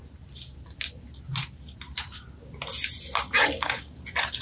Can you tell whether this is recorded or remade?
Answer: recorded